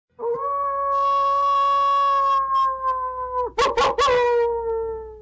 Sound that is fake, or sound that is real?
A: real